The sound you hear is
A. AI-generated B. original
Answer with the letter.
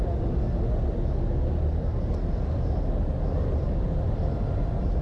B